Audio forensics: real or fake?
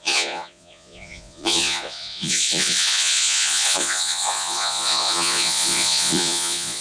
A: fake